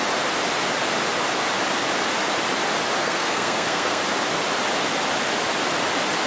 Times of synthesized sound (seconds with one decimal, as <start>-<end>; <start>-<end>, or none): 3.0-4.0